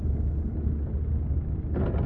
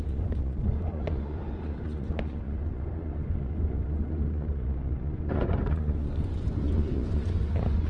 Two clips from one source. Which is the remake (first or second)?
second